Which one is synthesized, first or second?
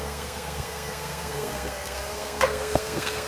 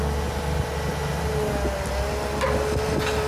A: first